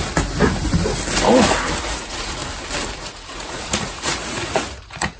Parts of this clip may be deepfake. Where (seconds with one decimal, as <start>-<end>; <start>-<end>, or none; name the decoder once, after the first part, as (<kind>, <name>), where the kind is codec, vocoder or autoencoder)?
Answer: 1.8-2.4 (vocoder, Vocos); 3.0-5.2